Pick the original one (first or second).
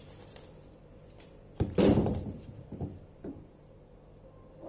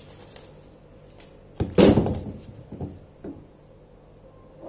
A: second